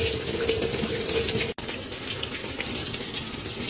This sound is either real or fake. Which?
real